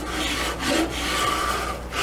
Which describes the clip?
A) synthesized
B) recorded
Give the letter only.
A